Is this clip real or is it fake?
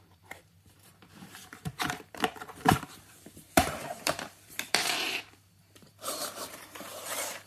fake